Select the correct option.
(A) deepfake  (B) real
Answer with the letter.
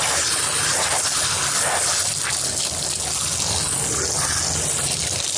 B